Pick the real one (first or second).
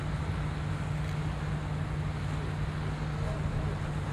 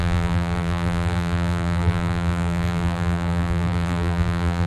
first